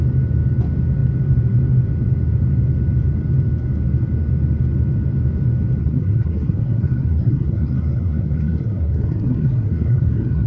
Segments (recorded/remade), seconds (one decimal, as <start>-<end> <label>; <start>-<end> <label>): 0.0-5.8 recorded; 5.8-10.5 remade